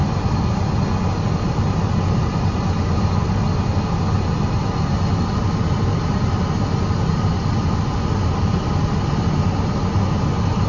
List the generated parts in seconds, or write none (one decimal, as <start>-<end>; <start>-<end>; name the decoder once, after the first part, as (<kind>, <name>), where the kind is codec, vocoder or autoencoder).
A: none